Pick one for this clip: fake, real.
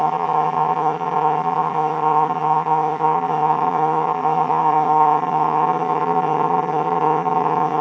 fake